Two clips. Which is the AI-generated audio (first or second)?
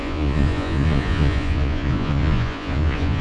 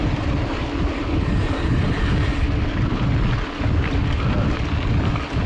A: first